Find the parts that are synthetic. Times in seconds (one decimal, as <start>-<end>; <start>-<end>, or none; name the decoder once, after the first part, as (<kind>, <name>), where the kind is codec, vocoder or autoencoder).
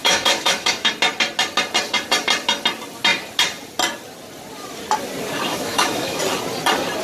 0.0-0.9 (autoencoder, DAC-VAE); 5.5-6.2